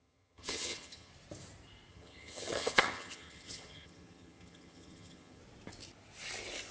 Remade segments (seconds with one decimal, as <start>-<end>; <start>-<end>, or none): 0.0-1.1; 1.9-5.4